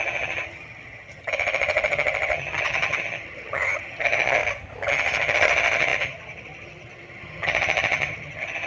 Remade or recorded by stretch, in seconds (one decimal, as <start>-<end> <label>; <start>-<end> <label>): 0.0-4.4 remade; 4.4-4.9 recorded; 4.9-8.7 remade